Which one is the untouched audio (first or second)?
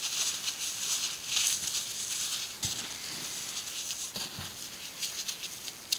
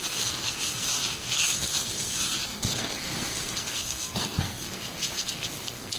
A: first